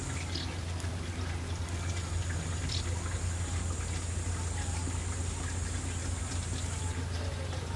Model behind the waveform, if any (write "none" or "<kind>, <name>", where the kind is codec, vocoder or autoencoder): none